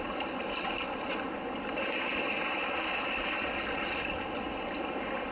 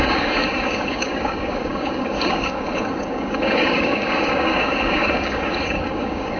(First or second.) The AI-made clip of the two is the second